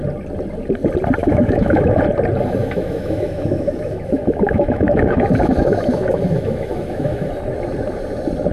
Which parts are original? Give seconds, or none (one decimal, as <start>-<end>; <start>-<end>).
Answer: 0.0-1.2; 2.0-2.6; 7.3-8.5